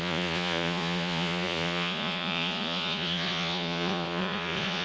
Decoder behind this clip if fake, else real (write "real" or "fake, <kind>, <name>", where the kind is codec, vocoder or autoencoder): fake, vocoder, Vocos